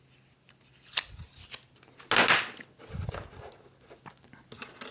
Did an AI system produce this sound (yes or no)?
no